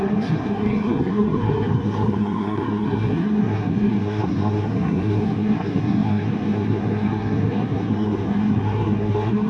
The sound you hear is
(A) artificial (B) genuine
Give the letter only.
A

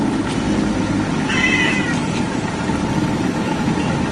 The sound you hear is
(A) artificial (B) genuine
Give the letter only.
B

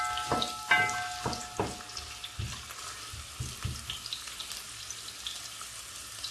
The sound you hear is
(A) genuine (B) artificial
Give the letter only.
A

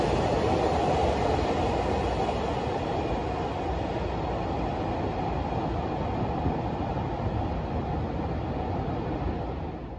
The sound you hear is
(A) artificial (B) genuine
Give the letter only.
B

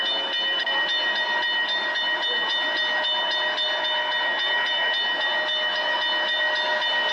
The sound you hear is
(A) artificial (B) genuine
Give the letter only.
B